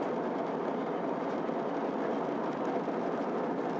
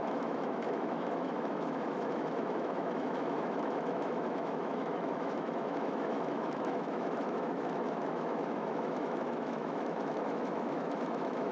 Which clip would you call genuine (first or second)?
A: first